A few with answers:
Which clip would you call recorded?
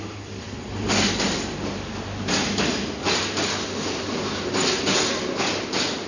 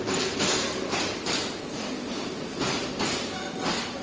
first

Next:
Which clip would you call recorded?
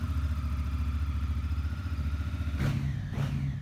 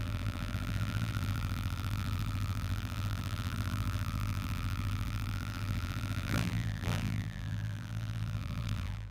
first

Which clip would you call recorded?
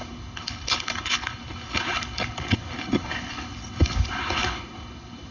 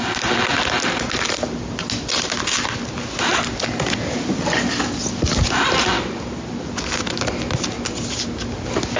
second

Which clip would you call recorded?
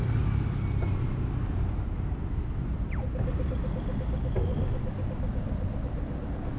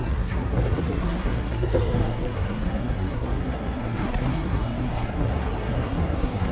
first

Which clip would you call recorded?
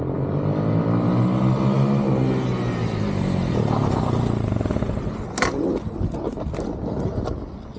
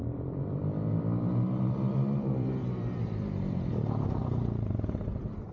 first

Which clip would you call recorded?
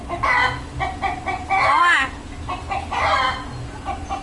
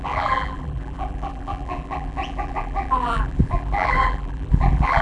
first